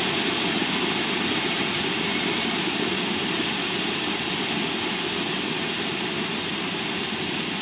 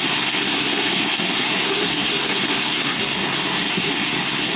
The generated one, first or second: second